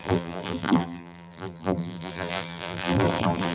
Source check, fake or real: fake